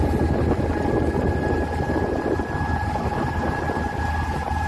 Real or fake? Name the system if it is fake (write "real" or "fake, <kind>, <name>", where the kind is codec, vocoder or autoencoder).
real